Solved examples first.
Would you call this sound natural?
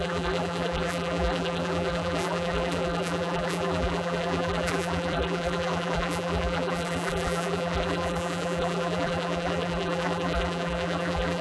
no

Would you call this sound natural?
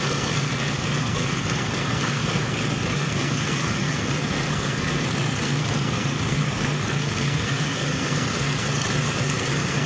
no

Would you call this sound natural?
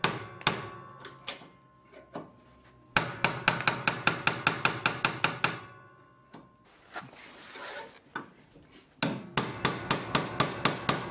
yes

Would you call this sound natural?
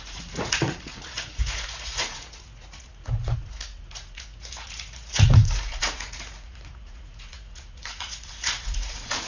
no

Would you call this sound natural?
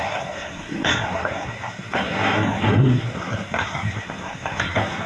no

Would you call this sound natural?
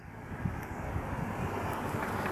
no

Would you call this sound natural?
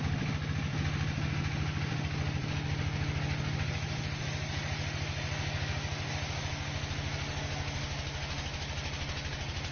yes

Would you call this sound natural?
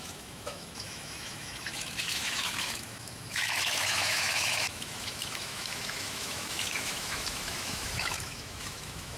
no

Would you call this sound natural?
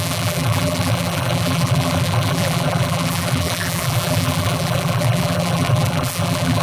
no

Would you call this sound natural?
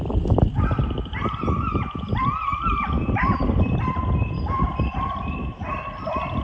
yes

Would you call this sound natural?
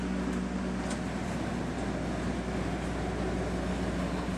yes